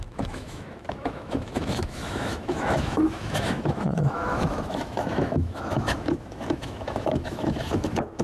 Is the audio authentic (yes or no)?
no